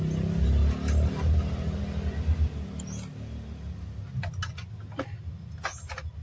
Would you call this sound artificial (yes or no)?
no